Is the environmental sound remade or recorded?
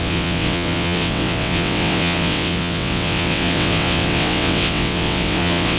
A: remade